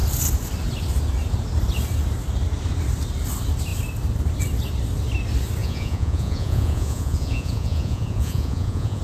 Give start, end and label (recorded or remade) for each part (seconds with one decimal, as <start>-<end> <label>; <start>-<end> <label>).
0.0-5.6 recorded; 5.6-9.0 remade